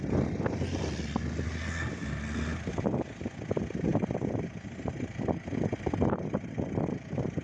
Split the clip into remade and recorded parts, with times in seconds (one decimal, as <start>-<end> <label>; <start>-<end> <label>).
0.0-7.4 recorded

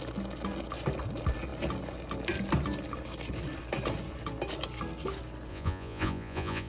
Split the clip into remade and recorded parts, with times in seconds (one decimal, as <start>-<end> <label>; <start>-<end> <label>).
0.0-5.5 recorded; 5.5-6.7 remade

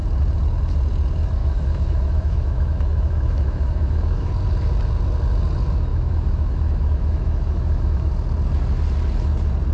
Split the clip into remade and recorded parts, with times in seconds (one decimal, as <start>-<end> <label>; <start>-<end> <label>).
0.0-1.4 recorded; 1.4-4.3 remade; 4.3-5.9 recorded; 5.9-8.1 remade; 8.1-9.7 recorded

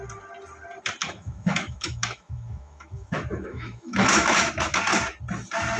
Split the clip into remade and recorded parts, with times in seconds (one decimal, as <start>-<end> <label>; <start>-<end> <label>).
0.0-1.0 recorded; 1.0-4.5 remade; 4.5-5.8 recorded

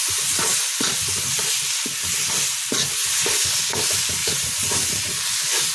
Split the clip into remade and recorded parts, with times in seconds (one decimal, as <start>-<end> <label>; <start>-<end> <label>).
0.0-4.2 recorded; 4.2-5.2 remade; 5.2-5.7 recorded